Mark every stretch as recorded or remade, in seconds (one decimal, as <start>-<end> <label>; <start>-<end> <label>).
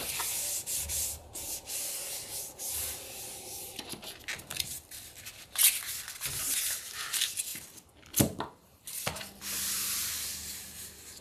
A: 0.0-11.2 recorded